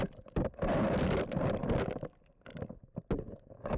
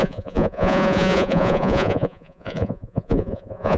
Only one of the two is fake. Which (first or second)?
second